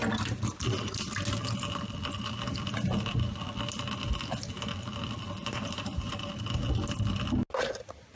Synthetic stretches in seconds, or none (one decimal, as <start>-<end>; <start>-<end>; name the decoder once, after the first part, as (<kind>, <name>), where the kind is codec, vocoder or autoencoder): 5.4-6.1 (vocoder, BigVGAN v2)